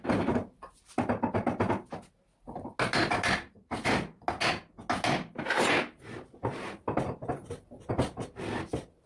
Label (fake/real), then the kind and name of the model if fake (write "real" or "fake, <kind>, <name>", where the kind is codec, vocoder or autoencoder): real